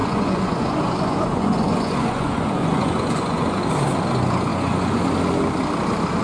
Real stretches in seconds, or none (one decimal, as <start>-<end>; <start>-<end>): 3.6-4.5; 5.0-6.2